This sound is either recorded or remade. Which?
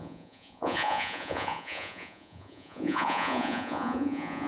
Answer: remade